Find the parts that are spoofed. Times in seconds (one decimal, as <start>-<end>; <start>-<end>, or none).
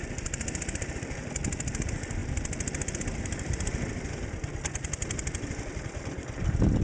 0.0-2.2; 3.2-6.8